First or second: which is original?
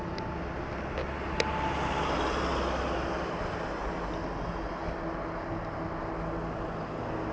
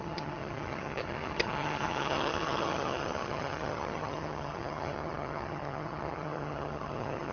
first